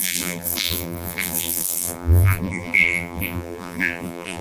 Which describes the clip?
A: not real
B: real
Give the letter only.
A